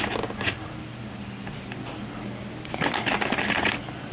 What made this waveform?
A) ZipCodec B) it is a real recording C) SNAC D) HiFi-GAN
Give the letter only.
B